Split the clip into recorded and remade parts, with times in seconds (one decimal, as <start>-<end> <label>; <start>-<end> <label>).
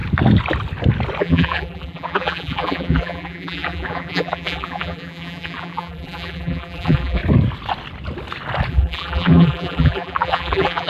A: 0.0-1.2 recorded; 1.2-7.2 remade; 7.2-8.7 recorded; 8.7-10.9 remade